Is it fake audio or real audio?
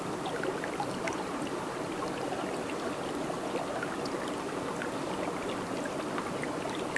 real